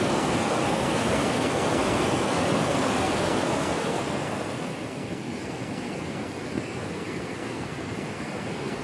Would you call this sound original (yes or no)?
no